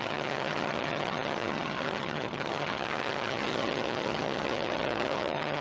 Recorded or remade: remade